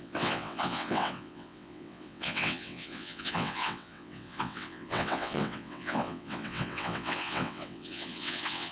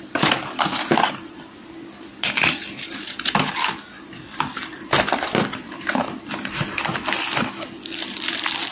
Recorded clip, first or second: second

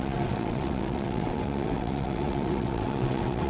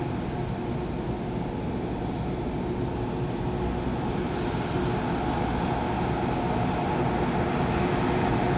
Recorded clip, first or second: second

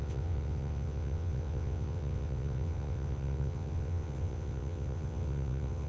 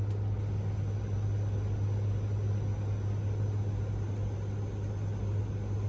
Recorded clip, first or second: second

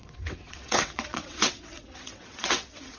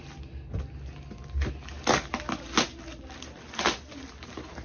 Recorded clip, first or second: second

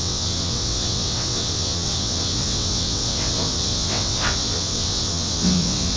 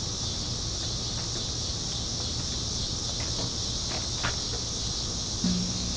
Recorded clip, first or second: second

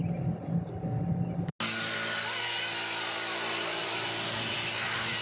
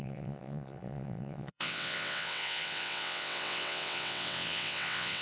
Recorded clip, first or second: first